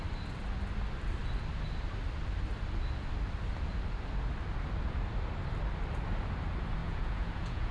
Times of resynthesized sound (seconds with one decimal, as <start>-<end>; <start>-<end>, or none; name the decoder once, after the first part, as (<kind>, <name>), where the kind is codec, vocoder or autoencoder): 6.8-7.7 (vocoder, Vocos)